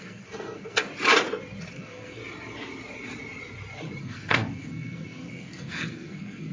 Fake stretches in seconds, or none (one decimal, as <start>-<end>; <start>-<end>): 0.0-0.9; 1.7-2.2; 4.0-6.5